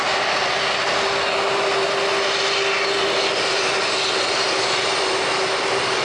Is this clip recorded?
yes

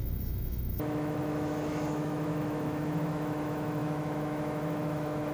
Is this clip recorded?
no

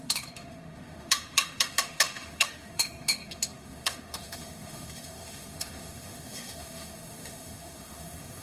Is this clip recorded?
no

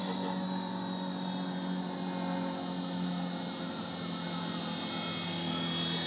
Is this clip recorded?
yes